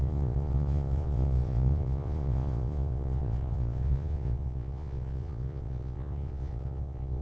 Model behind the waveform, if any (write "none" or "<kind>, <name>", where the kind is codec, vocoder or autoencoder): vocoder, Vocos